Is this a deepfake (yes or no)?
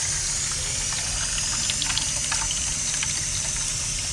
no